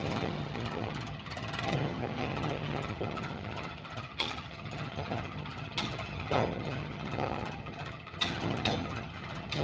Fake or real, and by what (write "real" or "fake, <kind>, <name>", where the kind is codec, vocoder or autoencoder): fake, vocoder, HiFi-GAN